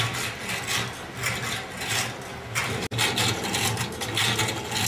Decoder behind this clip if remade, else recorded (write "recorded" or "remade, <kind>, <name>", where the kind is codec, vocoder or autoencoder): recorded